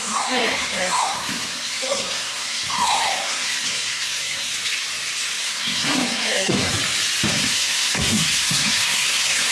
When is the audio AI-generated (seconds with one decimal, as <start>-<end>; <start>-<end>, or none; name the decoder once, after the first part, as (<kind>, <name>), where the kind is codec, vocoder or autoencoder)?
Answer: 0.0-4.5 (codec, SNAC); 5.4-6.7; 7.3-9.5